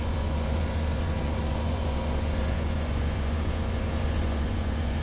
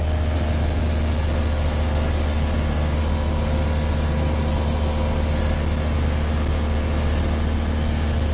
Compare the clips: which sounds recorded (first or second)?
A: second